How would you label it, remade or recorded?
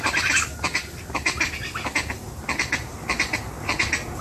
recorded